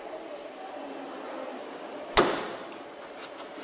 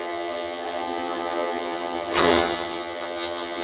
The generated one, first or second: second